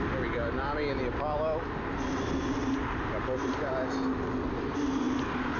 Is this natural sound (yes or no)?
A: yes